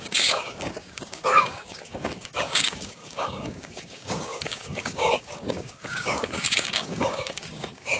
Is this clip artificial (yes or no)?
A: yes